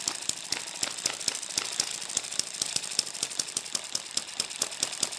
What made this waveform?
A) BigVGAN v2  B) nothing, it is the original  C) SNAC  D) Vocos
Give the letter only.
B